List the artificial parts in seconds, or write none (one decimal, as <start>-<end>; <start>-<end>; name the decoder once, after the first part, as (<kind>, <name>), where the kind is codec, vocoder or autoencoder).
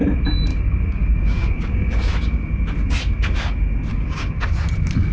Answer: 0.5-1.9 (codec, DAC); 3.9-4.5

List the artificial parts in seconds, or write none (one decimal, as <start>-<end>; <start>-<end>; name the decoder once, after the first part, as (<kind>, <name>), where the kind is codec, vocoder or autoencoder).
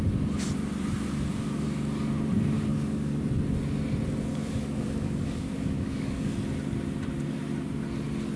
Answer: 1.3-2.1 (codec, DAC); 2.7-3.2; 4.3-6.3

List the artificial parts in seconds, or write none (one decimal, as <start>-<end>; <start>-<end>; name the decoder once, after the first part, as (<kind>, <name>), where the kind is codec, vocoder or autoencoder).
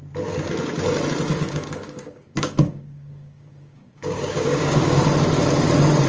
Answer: 1.3-5.0 (codec, DAC)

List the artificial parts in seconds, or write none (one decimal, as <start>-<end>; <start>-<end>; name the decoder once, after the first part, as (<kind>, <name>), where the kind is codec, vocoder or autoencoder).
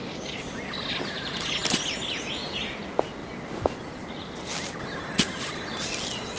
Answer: 0.0-0.6 (codec, DAC)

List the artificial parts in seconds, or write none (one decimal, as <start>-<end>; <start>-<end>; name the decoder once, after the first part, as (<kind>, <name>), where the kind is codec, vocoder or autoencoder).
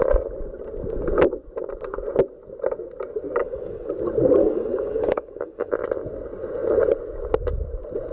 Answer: 3.4-3.9 (codec, DAC); 4.4-5.7